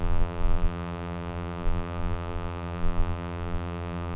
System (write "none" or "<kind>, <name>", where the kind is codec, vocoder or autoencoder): vocoder, BigVGAN v2